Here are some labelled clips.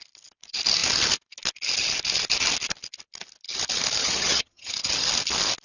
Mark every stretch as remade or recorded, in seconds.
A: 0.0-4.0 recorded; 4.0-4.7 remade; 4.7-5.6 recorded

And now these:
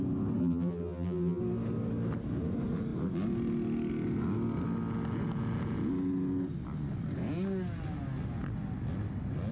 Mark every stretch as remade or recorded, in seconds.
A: 0.0-0.4 recorded; 0.4-1.4 remade; 1.4-9.5 recorded

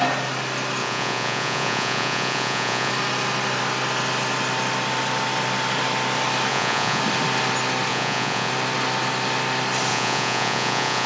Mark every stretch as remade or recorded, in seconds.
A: 0.0-0.8 recorded; 0.8-2.9 remade; 2.9-6.5 recorded; 6.5-7.0 remade; 7.0-7.9 recorded; 7.9-8.5 remade; 8.5-9.9 recorded; 9.9-11.1 remade

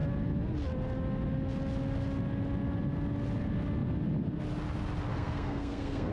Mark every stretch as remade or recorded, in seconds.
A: 0.0-5.1 recorded; 5.1-6.1 remade

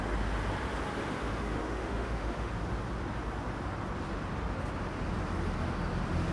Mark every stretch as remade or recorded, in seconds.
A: 0.0-1.0 recorded; 1.0-2.5 remade; 2.5-6.3 recorded

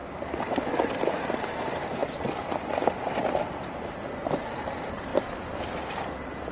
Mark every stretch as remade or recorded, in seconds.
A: 0.0-6.5 recorded

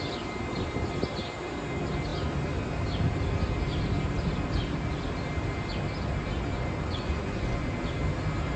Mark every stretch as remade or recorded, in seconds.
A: 0.0-6.5 recorded; 6.5-7.7 remade; 7.7-8.6 recorded

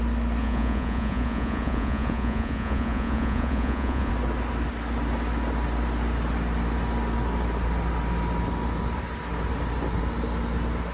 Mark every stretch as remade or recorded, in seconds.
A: 0.0-0.4 recorded; 0.4-4.1 remade; 4.1-10.9 recorded